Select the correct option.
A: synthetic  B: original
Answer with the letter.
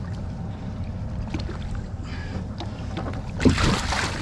B